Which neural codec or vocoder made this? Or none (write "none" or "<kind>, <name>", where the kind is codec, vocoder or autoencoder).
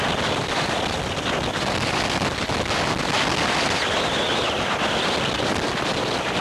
none